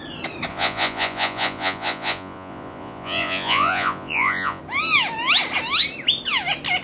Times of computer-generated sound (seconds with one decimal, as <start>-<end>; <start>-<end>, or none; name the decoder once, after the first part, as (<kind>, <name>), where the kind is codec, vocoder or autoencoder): 0.5-4.6 (vocoder, Vocos)